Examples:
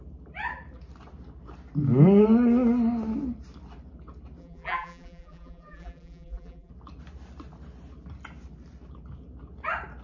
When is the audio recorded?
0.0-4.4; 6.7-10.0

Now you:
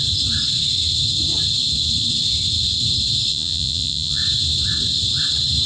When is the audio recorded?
0.0-3.3; 4.2-5.7

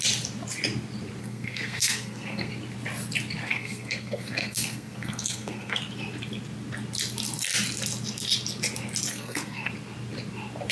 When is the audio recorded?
0.0-1.2; 2.5-3.4; 5.8-9.1; 9.7-10.7

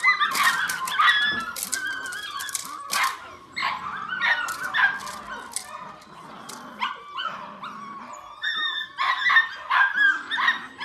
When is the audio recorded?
0.0-10.8

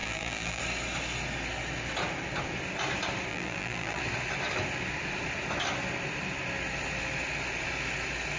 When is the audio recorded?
0.6-3.3; 4.0-8.4

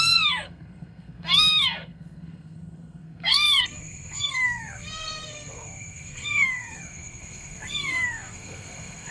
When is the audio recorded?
none

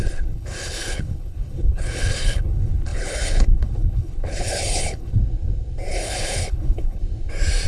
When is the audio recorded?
5.2-5.9; 7.0-7.7

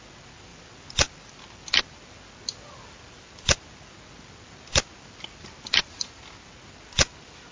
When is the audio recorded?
0.0-7.5